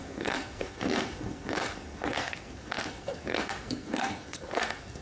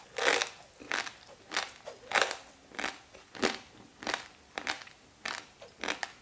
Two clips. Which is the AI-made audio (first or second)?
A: first